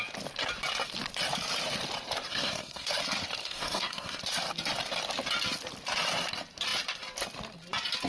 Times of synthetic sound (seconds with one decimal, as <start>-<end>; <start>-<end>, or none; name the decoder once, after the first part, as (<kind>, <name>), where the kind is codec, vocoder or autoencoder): 2.3-2.9 (codec, SNAC); 3.4-4.2